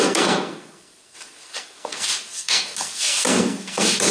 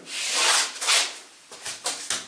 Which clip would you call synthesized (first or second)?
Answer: first